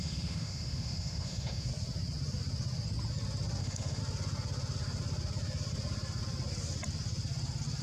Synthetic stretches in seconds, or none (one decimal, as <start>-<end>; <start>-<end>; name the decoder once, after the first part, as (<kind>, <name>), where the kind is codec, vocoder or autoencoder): 0.0-1.7 (autoencoder, DAC-VAE); 3.6-4.0